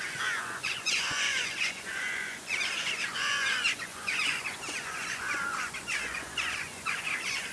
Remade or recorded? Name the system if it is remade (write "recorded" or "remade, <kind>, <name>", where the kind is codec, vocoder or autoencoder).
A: remade, vocoder, Vocos